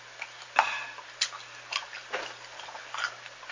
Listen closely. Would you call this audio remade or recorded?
recorded